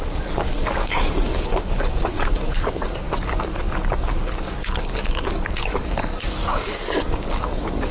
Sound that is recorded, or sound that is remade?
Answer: remade